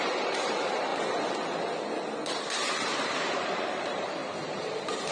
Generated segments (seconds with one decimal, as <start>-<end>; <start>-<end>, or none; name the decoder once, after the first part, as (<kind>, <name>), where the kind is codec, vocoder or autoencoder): 0.0-0.9 (vocoder, BigVGAN v2); 3.3-4.2